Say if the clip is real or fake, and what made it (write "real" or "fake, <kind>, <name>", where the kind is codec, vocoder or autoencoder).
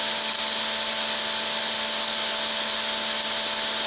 real